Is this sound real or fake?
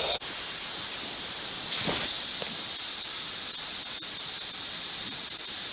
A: real